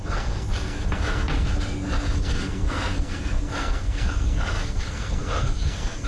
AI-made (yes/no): yes